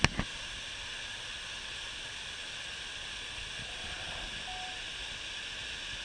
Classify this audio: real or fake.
real